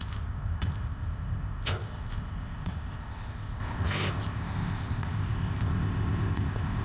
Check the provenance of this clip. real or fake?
fake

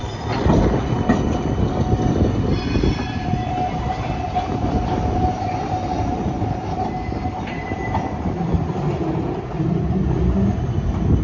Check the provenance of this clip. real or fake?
real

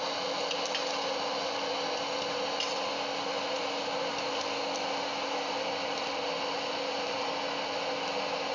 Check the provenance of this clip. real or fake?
real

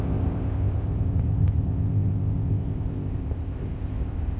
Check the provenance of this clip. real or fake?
fake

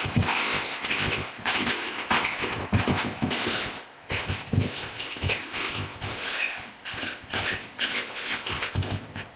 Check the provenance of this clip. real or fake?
fake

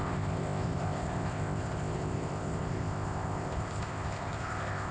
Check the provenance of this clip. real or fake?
fake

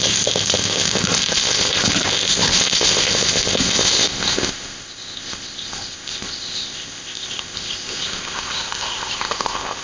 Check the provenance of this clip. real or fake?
fake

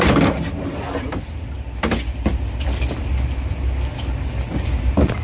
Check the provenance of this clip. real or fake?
real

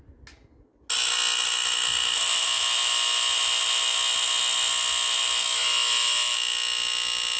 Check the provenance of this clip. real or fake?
real